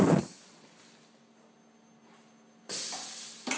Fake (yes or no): no